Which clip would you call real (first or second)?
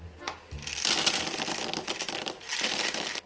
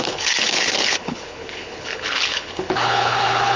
first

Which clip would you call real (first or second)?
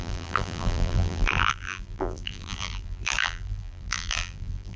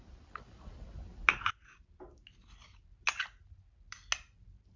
second